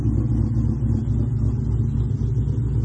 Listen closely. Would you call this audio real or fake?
real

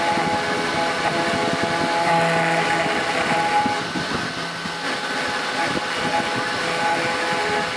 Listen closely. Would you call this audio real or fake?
real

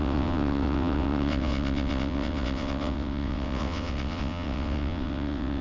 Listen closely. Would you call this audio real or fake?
fake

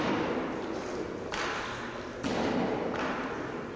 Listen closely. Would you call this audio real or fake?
real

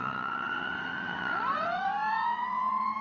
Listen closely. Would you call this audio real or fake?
fake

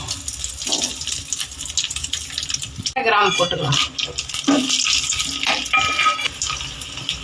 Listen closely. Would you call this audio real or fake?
real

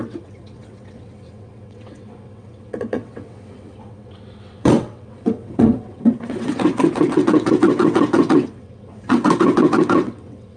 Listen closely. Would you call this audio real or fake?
fake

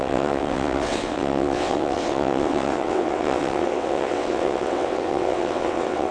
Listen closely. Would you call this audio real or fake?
fake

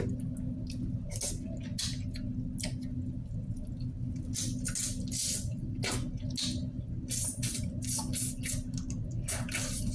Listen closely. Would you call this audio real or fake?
real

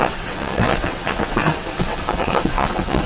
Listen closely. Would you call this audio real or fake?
fake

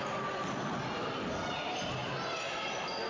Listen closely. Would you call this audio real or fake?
real